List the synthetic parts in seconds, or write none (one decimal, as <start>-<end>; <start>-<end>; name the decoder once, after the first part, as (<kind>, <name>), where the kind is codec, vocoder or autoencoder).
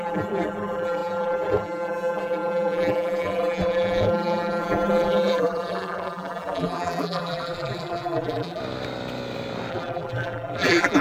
0.0-8.6 (vocoder, BigVGAN v2); 9.7-11.0